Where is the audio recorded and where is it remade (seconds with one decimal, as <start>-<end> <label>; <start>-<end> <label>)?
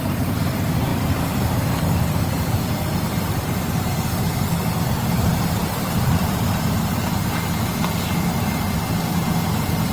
0.0-0.9 recorded; 0.9-1.7 remade; 1.7-3.1 recorded; 3.1-4.3 remade; 4.3-9.9 recorded